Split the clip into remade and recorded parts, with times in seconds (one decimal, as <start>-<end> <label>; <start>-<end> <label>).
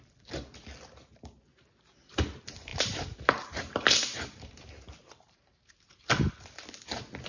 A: 0.0-2.7 recorded; 2.7-5.9 remade; 5.9-7.3 recorded